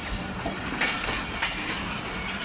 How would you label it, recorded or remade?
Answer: recorded